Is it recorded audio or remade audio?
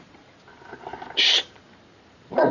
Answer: remade